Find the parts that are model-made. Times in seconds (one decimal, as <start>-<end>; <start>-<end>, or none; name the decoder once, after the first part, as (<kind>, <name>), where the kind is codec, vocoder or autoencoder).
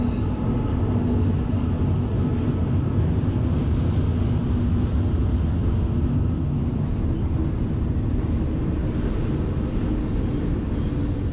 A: 2.3-3.3 (vocoder, BigVGAN v2)